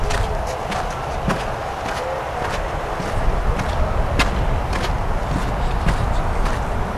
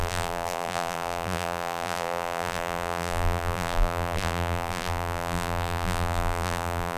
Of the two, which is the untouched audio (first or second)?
first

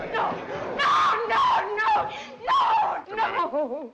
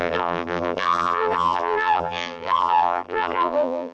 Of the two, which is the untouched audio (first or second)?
first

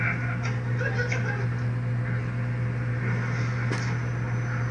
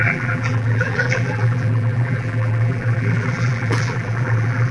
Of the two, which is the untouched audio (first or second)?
first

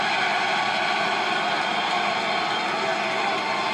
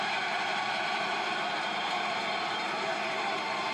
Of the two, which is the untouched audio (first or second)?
first